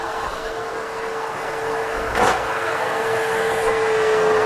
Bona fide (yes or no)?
no